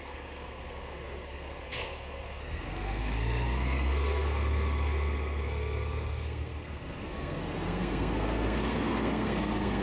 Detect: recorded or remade remade